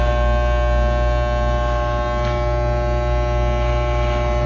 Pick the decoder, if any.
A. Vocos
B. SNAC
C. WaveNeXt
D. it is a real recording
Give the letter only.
D